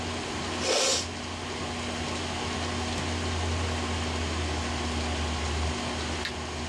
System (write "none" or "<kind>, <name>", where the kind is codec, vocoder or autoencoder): none